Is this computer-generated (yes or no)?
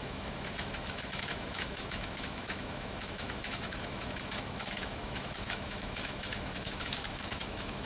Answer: yes